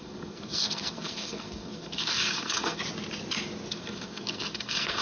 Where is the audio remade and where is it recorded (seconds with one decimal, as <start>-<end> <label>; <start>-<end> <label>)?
0.0-2.8 remade; 2.8-3.7 recorded; 3.7-5.0 remade